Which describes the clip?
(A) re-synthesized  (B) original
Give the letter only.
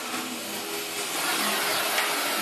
B